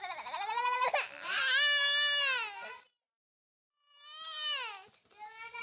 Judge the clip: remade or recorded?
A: recorded